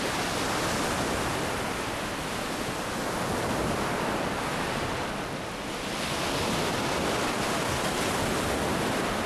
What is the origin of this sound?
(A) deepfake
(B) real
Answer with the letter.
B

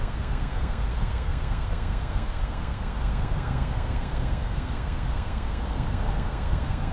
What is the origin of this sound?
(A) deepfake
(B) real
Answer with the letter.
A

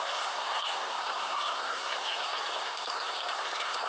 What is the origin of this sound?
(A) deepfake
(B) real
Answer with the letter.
A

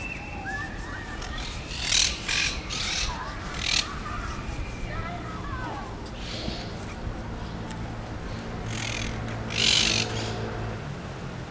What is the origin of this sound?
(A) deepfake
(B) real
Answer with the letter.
B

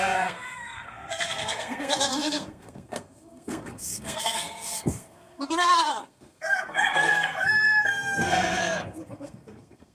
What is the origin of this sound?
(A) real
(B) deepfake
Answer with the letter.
B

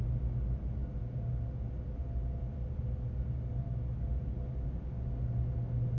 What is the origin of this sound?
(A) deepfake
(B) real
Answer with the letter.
B